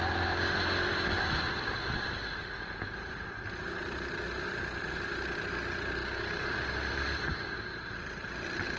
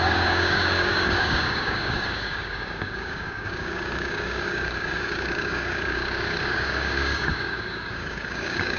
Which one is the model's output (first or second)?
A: second